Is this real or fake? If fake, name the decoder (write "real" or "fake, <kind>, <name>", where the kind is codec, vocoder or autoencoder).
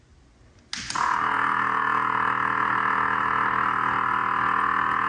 real